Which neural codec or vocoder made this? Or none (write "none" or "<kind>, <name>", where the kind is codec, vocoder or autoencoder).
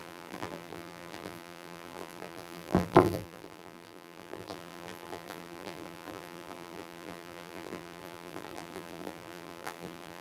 vocoder, BigVGAN v2